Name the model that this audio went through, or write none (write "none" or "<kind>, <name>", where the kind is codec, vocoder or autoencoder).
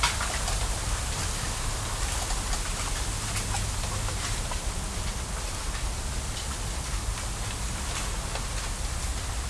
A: none